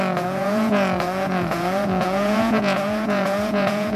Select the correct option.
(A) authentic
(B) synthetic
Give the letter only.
B